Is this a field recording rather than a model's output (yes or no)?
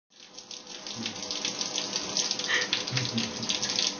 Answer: yes